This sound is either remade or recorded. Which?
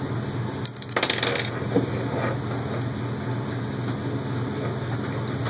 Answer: recorded